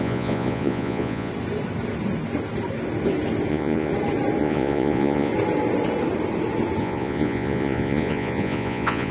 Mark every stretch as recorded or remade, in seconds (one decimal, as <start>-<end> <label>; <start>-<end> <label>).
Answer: 0.0-1.3 remade; 1.3-3.5 recorded; 3.5-3.9 remade; 3.9-4.4 recorded; 4.4-5.3 remade; 5.3-6.8 recorded; 6.8-9.1 remade

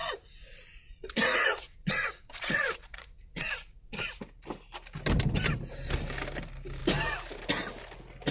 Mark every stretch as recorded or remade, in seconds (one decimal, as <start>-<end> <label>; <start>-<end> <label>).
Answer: 0.0-4.2 remade; 4.2-8.3 recorded

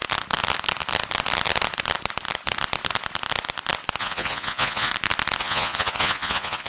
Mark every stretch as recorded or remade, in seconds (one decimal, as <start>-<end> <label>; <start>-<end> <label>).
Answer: 0.0-4.0 recorded; 4.0-4.9 remade; 4.9-5.4 recorded; 5.4-6.7 remade

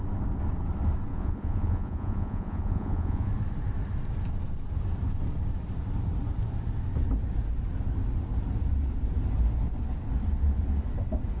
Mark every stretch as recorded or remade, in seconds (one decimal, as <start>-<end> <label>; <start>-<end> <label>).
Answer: 0.0-1.1 recorded; 1.1-3.3 remade; 3.3-11.4 recorded

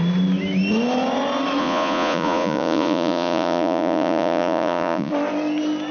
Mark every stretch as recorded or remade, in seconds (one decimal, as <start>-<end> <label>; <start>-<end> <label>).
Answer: 0.0-1.6 recorded; 1.6-5.1 remade; 5.1-5.9 recorded

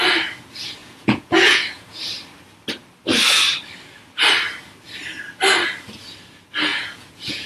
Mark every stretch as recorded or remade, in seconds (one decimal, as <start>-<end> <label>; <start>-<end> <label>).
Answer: 0.0-0.8 recorded; 0.8-2.0 remade; 2.0-6.7 recorded; 6.7-7.5 remade

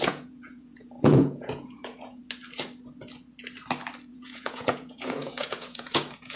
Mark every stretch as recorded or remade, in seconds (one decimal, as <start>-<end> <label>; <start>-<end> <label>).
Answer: 0.0-2.2 remade; 2.2-4.1 recorded; 4.1-6.4 remade